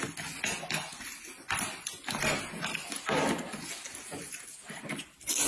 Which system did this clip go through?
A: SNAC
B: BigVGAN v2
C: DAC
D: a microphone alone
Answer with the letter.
D